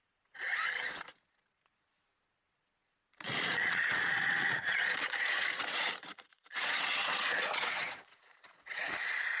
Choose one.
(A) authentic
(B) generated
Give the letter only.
B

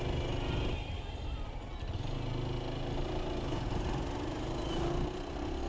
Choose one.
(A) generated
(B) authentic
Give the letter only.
B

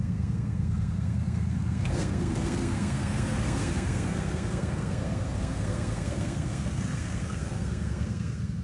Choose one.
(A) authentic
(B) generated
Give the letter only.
B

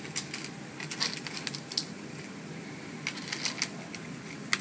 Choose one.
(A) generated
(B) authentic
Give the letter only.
B